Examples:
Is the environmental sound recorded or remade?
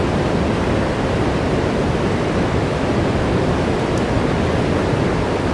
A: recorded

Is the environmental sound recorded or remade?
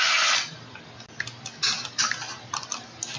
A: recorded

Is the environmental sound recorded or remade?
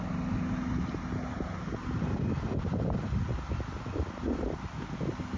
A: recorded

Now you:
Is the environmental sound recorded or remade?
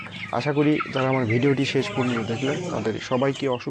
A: recorded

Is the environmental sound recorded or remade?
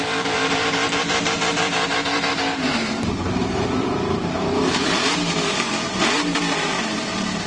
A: remade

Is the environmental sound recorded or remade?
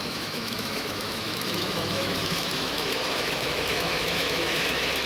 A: remade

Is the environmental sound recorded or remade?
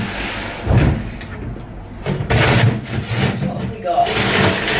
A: recorded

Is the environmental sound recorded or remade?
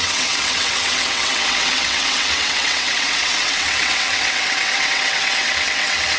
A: remade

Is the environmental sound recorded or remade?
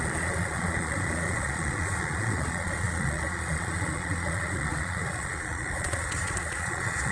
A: remade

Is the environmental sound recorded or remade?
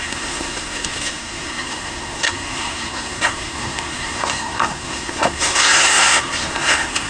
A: remade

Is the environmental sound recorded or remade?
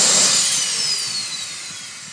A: recorded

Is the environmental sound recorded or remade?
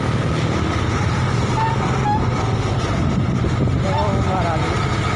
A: recorded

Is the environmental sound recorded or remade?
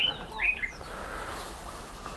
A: recorded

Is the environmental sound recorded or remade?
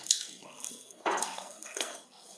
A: remade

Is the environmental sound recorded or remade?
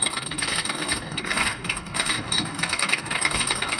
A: remade